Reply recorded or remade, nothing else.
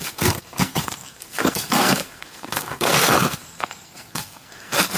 remade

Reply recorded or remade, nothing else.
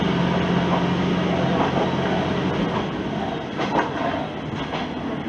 recorded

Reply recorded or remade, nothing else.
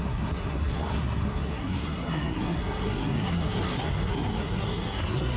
remade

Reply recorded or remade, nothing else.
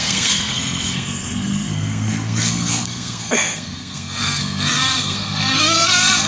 remade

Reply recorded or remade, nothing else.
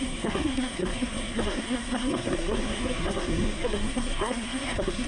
remade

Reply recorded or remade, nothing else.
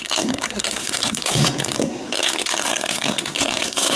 remade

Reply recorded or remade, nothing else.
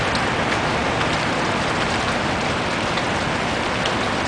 recorded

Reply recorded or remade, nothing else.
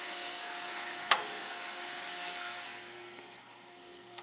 remade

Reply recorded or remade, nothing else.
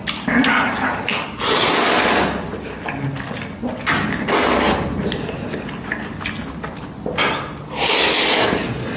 recorded